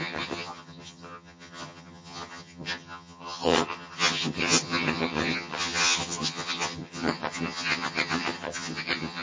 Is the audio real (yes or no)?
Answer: no